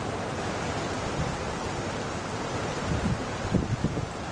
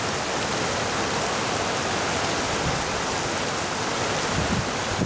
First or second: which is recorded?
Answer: second